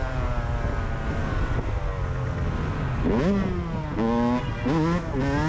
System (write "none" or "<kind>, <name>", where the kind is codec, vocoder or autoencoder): none